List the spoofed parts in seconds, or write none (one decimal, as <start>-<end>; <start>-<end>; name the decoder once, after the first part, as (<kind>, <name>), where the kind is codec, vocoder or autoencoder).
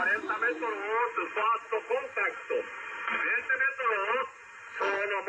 none